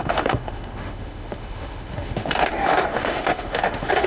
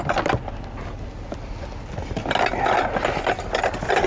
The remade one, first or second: first